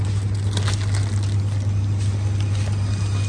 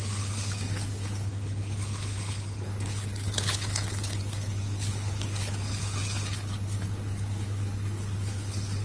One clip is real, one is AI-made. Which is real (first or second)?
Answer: first